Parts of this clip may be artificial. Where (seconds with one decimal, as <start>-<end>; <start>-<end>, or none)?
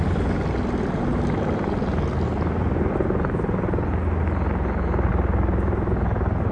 none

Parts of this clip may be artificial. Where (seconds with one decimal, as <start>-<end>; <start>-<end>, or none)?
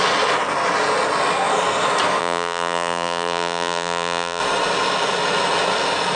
2.2-4.4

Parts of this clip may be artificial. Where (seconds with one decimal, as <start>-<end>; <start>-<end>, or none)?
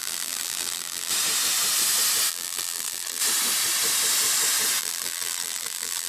0.0-1.1; 2.3-3.2; 4.8-6.1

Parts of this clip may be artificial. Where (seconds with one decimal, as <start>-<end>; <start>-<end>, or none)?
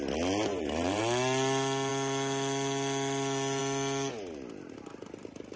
0.5-1.0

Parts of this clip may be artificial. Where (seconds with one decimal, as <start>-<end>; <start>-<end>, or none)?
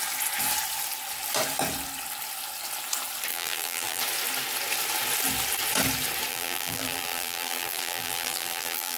3.3-4.0; 6.3-9.0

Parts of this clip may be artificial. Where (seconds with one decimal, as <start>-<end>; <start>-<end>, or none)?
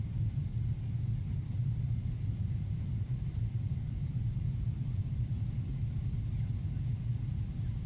1.3-4.2